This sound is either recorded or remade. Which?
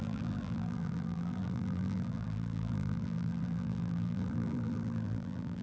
remade